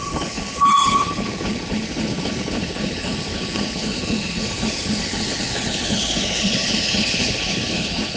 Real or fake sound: fake